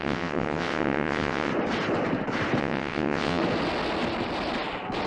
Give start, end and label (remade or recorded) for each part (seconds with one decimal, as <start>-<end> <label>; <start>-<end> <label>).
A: 0.0-1.5 remade; 1.5-2.6 recorded; 2.6-3.4 remade; 3.4-5.1 recorded